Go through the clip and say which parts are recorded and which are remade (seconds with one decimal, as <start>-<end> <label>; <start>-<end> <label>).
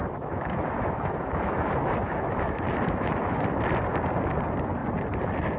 0.0-3.4 remade; 3.4-5.6 recorded